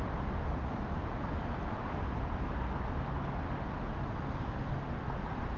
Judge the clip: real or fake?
real